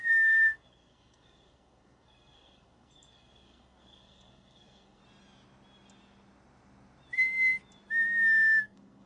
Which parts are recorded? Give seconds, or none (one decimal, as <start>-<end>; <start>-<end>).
5.0-8.6